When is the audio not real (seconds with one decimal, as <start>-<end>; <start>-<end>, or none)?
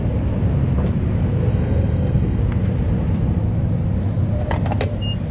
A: 1.5-2.4